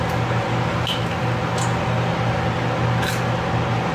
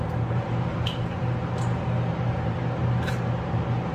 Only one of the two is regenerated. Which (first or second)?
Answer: second